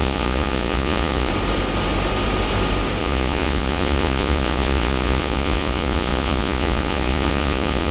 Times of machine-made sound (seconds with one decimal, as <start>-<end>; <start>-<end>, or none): 0.0-1.3; 3.0-7.9